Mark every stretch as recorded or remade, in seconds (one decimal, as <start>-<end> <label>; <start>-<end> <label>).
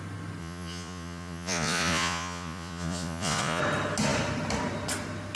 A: 0.0-0.4 recorded; 0.4-3.6 remade; 3.6-5.4 recorded